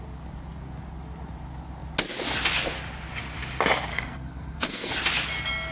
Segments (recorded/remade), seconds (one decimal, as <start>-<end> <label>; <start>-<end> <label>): 0.0-3.9 recorded; 3.9-4.9 remade; 4.9-5.7 recorded